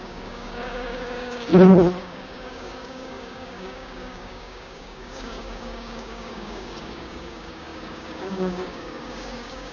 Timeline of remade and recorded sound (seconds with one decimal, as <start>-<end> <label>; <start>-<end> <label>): 0.0-1.5 remade; 1.5-2.0 recorded; 2.0-9.7 remade